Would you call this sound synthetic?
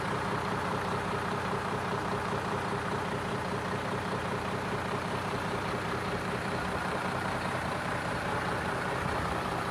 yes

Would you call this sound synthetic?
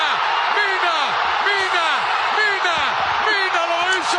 no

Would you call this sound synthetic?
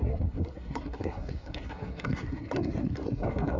yes